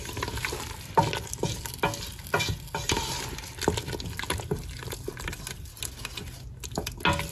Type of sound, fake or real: real